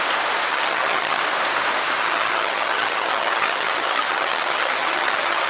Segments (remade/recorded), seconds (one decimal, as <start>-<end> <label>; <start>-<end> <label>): 0.0-0.5 recorded; 0.5-1.2 remade; 1.2-2.0 recorded; 2.0-5.5 remade